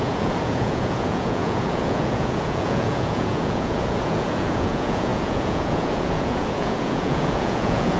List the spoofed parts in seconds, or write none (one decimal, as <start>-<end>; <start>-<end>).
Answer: 0.0-8.0